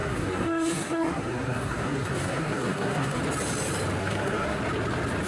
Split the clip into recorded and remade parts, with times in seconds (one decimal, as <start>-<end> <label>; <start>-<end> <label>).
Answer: 0.0-3.2 remade; 3.2-4.0 recorded; 4.0-4.6 remade; 4.6-5.3 recorded